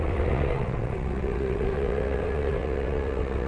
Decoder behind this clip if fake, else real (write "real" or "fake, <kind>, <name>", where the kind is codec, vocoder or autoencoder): fake, vocoder, WaveNeXt